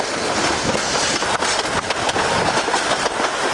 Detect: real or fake real